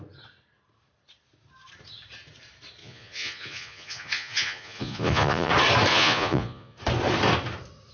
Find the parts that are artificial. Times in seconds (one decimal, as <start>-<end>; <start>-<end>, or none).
2.8-5.5; 5.9-6.8